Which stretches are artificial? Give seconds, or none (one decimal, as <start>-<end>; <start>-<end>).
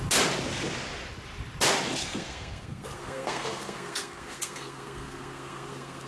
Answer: 2.0-6.1